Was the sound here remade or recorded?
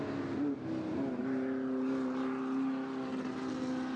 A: recorded